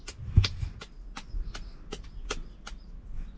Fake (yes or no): no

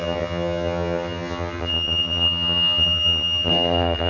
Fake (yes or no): yes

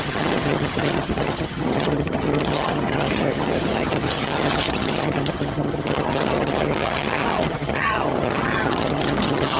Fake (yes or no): yes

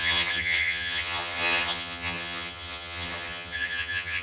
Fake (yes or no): yes